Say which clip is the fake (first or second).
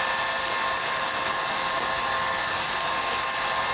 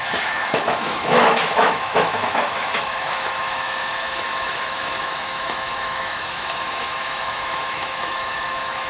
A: second